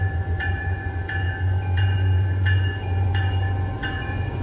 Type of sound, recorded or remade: remade